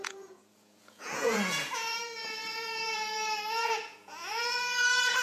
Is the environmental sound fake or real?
fake